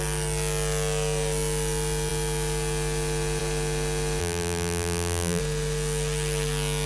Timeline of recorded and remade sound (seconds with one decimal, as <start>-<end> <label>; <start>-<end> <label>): 0.0-4.2 recorded; 4.2-5.4 remade; 5.4-6.9 recorded